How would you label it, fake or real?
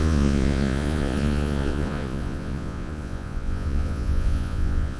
fake